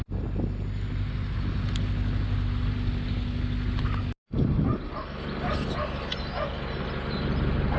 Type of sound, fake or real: real